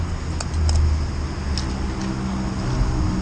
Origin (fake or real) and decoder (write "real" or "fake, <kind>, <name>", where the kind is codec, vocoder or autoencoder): real